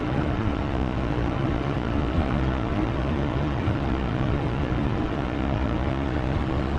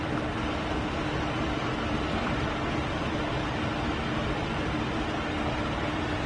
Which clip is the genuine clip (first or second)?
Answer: second